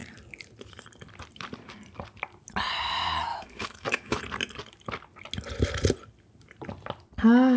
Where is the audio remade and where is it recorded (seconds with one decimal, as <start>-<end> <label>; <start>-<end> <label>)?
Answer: 0.0-3.3 recorded; 3.3-4.2 remade; 4.2-7.6 recorded